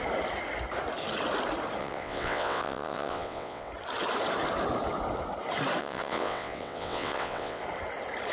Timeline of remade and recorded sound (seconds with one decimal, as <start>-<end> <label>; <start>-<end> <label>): 0.0-1.8 recorded; 1.8-3.7 remade; 3.7-5.8 recorded; 5.8-7.6 remade; 7.6-8.3 recorded

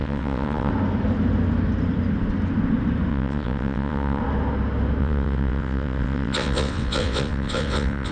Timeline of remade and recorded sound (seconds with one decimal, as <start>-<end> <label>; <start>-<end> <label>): 0.0-0.7 remade; 0.7-3.1 recorded; 3.1-4.2 remade; 4.2-5.0 recorded; 5.0-8.1 remade

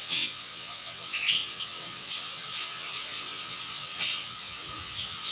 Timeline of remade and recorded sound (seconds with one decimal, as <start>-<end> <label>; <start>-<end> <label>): 0.0-5.3 remade

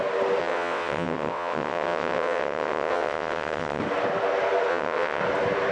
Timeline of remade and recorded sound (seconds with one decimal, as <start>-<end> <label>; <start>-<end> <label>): 0.0-0.4 recorded; 0.4-3.8 remade; 3.8-4.7 recorded; 4.7-5.2 remade; 5.2-5.7 recorded

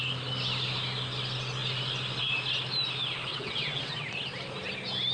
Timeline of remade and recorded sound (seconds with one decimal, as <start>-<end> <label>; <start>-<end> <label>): 0.0-3.3 recorded; 3.3-4.1 remade; 4.1-5.1 recorded

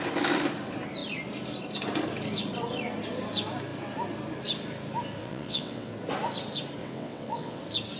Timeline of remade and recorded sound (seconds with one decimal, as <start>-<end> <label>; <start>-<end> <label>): 0.0-5.2 recorded; 5.2-5.9 remade; 5.9-6.8 recorded; 6.8-7.6 remade; 7.6-8.0 recorded